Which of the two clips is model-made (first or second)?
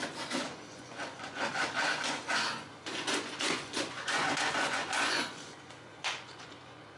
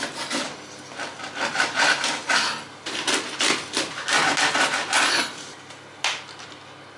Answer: first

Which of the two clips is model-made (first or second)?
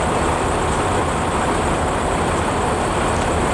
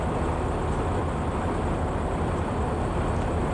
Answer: first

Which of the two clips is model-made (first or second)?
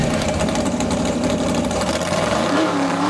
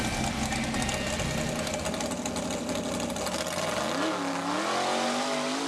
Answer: first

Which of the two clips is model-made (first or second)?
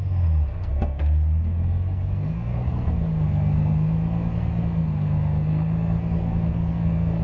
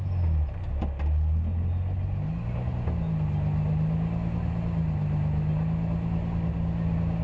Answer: first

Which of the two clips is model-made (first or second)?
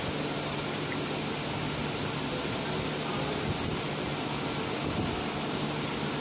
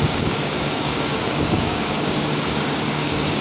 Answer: second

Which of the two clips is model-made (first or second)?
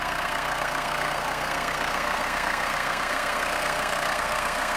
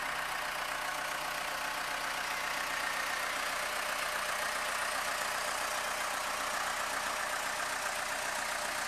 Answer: first